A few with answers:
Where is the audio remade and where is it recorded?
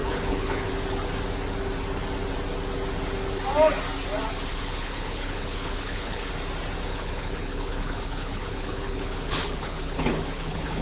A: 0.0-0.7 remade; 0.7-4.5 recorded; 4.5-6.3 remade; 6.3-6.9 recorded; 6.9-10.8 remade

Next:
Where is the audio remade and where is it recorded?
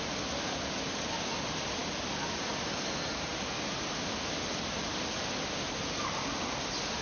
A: 0.0-7.0 recorded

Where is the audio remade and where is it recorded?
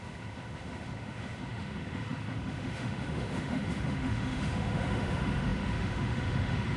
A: 0.0-6.8 remade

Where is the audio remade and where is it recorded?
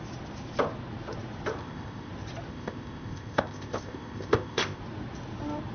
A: 0.0-1.6 recorded; 1.6-2.1 remade; 2.1-2.5 recorded; 2.5-4.8 remade; 4.8-5.7 recorded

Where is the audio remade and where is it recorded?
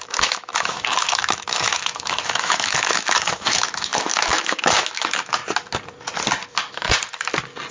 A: 0.0-5.4 remade; 5.4-7.7 recorded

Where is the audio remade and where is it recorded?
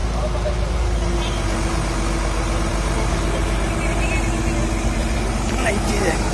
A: 0.0-5.0 recorded; 5.0-5.7 remade; 5.7-6.3 recorded